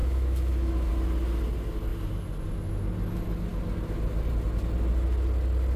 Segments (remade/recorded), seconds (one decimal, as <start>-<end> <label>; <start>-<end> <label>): 0.0-0.9 remade; 0.9-5.8 recorded